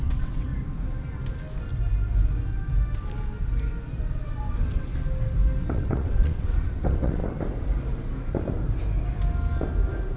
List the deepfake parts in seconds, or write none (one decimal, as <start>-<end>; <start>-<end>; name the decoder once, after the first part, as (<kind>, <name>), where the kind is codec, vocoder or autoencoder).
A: 0.0-0.5 (vocoder, WaveNeXt); 4.0-4.9; 5.7-7.2